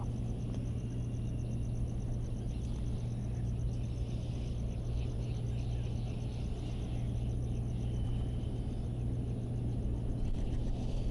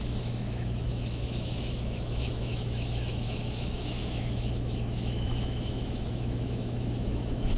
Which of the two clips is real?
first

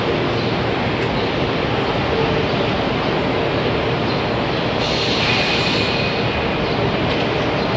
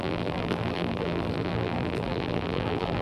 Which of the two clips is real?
first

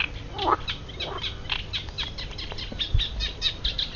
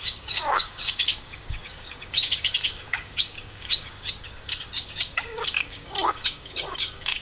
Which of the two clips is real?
first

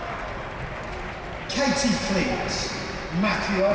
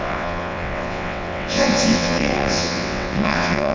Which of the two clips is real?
first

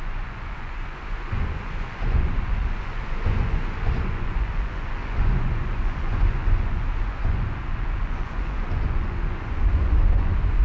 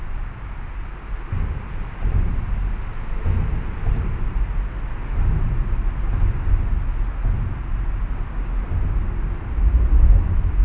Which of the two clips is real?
second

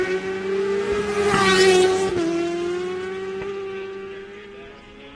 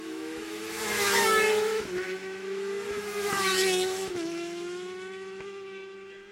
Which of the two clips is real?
first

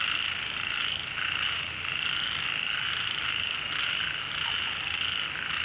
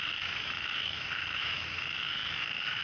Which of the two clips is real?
first